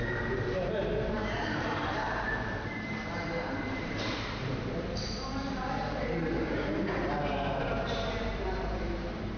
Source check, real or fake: fake